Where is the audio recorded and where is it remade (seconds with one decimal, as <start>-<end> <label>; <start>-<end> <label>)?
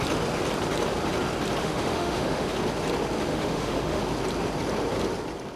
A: 0.0-1.6 recorded; 1.6-2.5 remade; 2.5-3.3 recorded; 3.3-4.0 remade; 4.0-5.6 recorded